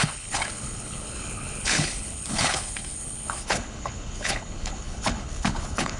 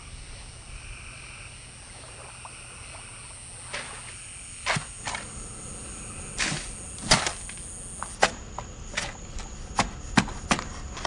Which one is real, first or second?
second